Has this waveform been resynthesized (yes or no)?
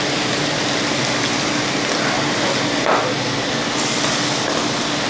no